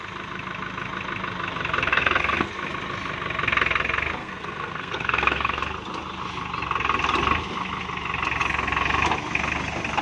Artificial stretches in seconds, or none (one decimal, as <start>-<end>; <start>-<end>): 1.9-2.5; 4.2-5.6